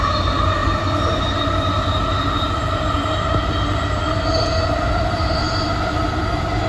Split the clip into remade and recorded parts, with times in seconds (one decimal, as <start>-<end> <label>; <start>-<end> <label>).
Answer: 0.0-6.7 recorded